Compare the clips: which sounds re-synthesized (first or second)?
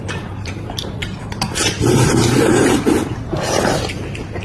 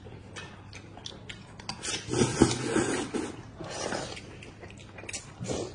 first